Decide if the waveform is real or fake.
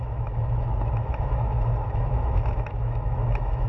fake